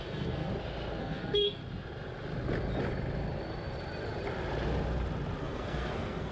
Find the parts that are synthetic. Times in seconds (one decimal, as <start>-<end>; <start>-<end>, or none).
0.0-0.5; 1.0-1.6; 5.4-6.3

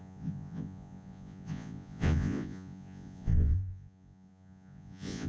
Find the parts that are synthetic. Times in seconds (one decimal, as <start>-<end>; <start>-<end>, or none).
0.0-5.3

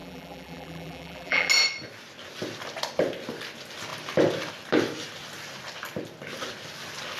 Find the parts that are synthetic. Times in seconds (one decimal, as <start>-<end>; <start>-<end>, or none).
0.0-1.5

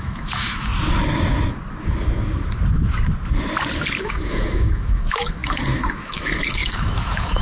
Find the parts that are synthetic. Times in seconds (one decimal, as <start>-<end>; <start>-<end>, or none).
0.0-0.7; 4.0-7.4